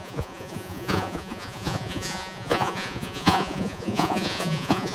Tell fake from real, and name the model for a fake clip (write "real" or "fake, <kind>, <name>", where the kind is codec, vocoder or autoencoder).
fake, vocoder, Vocos